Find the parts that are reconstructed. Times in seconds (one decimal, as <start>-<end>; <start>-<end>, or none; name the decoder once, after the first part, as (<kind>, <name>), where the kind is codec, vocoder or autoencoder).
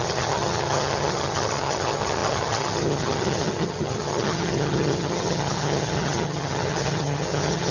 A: 0.0-7.7 (vocoder, HiFi-GAN)